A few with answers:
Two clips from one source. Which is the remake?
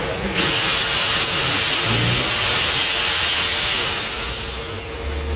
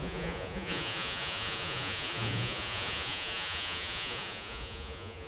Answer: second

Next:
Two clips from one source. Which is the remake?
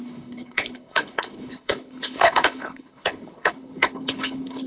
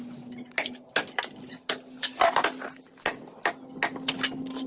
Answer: first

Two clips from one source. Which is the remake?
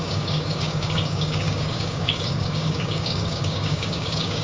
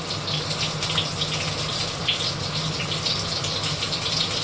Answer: first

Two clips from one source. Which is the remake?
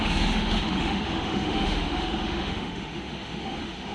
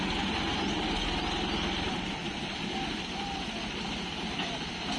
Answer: first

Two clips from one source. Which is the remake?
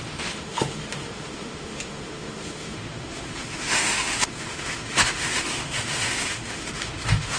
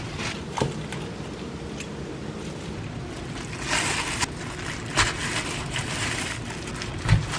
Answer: first